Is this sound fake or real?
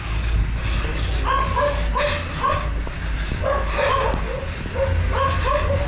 real